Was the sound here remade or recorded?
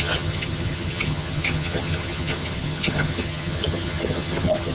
remade